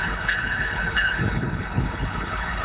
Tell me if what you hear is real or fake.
fake